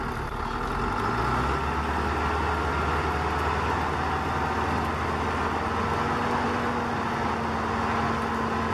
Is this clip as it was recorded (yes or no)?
yes